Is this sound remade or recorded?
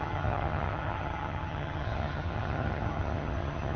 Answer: remade